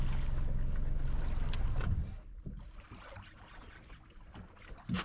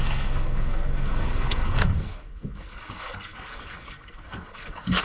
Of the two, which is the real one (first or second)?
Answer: first